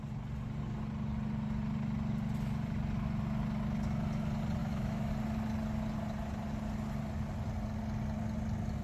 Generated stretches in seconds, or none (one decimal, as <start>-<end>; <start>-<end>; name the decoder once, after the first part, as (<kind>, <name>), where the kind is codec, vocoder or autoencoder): 4.6-5.1 (autoencoder, DAC-VAE)